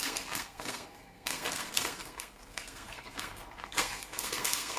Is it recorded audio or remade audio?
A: remade